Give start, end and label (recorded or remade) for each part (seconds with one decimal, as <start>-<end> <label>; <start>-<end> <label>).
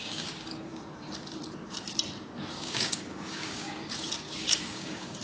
0.0-0.7 remade; 0.7-2.5 recorded; 2.5-3.8 remade; 3.8-4.4 recorded; 4.4-5.2 remade